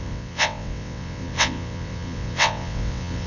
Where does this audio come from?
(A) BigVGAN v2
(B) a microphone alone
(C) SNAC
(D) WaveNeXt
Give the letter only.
D